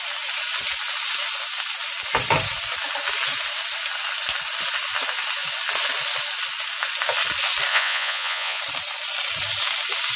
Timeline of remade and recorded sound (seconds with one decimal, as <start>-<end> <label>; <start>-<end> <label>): 0.0-7.7 recorded; 7.7-8.6 remade; 8.6-10.2 recorded